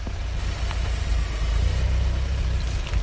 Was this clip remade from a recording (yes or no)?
no